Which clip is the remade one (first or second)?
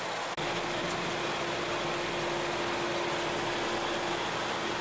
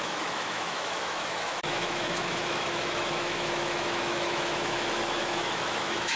second